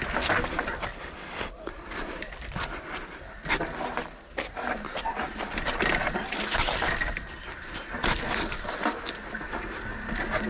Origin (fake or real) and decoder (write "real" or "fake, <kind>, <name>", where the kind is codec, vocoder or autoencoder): real